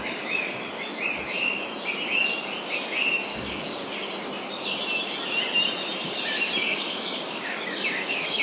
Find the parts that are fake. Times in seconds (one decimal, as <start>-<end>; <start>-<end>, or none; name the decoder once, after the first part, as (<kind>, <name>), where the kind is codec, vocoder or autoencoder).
3.3-3.9 (codec, DAC); 6.7-8.4